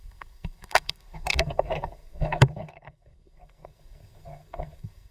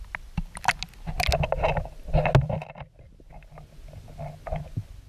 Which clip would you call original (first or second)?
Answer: second